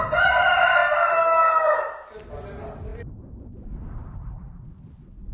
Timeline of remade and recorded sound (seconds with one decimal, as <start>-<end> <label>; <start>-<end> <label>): 0.0-5.3 recorded